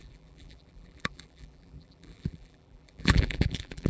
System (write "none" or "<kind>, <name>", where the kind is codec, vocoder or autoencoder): vocoder, BigVGAN v2